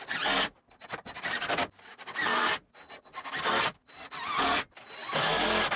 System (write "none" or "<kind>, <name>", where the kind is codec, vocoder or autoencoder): none